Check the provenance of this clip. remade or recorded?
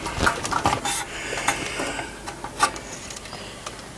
recorded